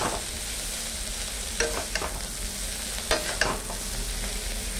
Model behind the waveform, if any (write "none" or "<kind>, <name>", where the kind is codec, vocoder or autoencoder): none